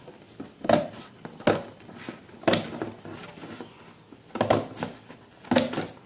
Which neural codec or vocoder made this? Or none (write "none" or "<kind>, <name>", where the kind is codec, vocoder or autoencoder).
none